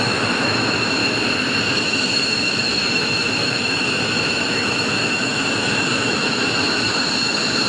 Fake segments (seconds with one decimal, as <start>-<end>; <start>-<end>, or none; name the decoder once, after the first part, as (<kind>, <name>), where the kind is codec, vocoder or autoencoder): 0.0-1.0 (autoencoder, DAC-VAE); 1.7-7.7

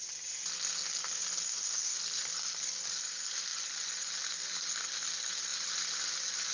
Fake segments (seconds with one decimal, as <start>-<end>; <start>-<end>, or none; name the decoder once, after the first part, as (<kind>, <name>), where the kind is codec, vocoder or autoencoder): 1.5-2.0 (autoencoder, DAC-VAE)

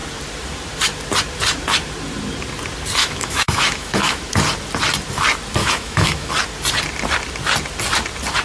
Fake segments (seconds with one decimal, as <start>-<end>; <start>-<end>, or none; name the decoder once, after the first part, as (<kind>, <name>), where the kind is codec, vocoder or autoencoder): 3.0-4.2 (autoencoder, DAC-VAE); 5.6-6.3

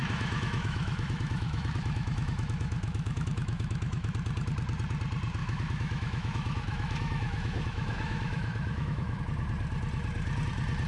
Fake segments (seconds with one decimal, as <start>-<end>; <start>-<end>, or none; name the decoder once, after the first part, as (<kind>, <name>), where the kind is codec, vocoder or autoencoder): 0.0-4.1 (autoencoder, DAC-VAE); 5.4-9.2

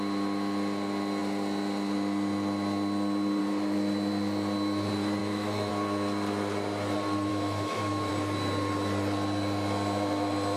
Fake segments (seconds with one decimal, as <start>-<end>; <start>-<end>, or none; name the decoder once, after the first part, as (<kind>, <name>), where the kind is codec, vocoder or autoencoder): 5.2-5.7 (autoencoder, DAC-VAE); 7.3-8.1

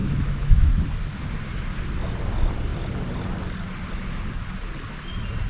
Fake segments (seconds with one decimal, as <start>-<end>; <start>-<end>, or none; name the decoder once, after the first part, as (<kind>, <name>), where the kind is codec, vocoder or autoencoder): 0.0-0.7 (autoencoder, DAC-VAE)

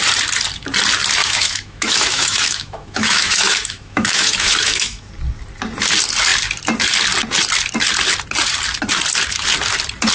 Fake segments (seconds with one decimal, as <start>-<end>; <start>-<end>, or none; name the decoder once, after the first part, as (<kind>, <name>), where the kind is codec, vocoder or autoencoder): 1.2-5.1 (autoencoder, DAC-VAE)